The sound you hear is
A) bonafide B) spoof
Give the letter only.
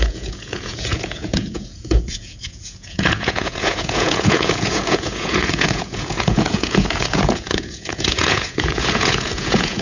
B